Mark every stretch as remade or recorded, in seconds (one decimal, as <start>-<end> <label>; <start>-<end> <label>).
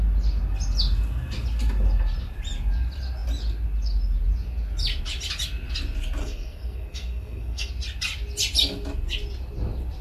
0.0-6.2 recorded; 6.2-7.7 remade; 7.7-10.0 recorded